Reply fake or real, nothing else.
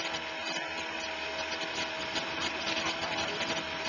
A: real